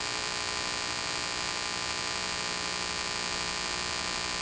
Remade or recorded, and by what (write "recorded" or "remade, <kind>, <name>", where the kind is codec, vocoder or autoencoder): recorded